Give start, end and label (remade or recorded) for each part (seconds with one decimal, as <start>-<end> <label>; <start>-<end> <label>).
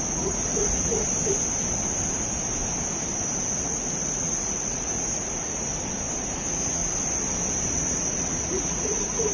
0.0-1.0 remade; 1.0-3.6 recorded; 3.6-5.7 remade; 5.7-6.2 recorded; 6.2-6.8 remade; 6.8-7.7 recorded; 7.7-9.3 remade